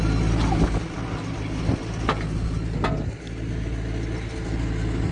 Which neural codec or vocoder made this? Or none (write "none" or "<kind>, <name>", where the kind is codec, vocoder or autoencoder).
none